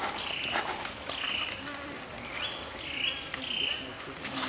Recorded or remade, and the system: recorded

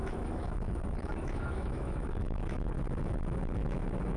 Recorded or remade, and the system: remade, autoencoder, DAC-VAE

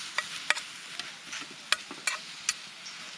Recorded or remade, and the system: recorded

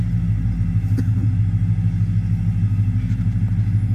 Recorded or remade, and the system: recorded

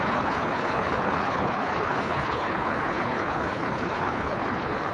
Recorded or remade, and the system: remade, codec, HILCodec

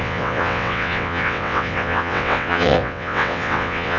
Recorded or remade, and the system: remade, vocoder, WaveNeXt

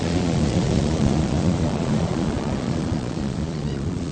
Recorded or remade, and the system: remade, vocoder, Vocos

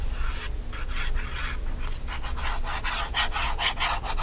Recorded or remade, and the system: recorded